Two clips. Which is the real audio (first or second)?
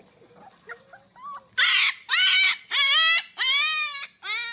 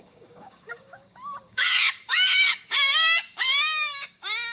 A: first